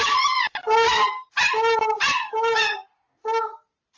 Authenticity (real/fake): real